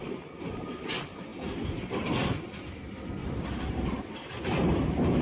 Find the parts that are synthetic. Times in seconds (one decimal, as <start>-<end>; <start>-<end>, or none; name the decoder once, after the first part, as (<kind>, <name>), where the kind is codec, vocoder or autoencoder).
3.2-4.4 (vocoder, BigVGAN v2)